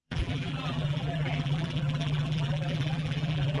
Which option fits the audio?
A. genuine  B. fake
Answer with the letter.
B